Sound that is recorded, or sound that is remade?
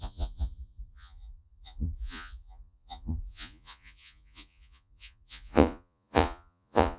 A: remade